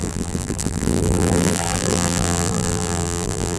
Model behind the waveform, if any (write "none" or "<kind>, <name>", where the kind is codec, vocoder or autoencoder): vocoder, BigVGAN v2